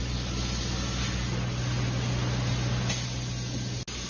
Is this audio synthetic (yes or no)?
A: no